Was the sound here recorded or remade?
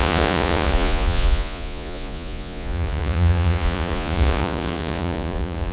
remade